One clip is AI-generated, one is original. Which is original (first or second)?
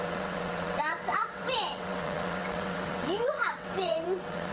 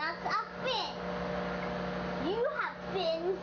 second